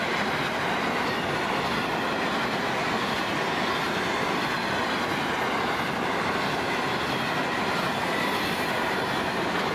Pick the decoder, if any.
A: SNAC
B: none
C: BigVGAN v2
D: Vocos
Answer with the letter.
B